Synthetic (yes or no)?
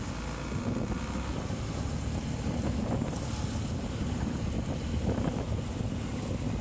no